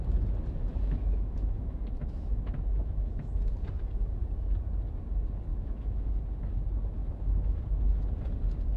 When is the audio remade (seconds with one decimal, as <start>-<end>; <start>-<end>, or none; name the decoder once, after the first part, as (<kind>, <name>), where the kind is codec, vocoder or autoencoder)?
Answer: 0.7-3.3 (autoencoder, DAC-VAE); 5.5-6.1; 7.0-7.6